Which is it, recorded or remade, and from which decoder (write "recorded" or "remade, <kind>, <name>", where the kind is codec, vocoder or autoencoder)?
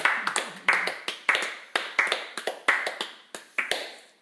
recorded